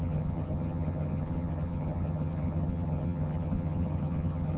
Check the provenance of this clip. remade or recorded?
remade